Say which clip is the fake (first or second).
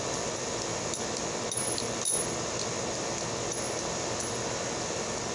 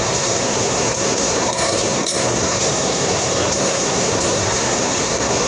second